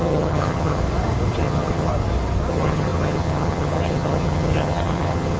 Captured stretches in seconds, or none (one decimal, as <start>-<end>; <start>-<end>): 0.8-1.4; 1.9-2.5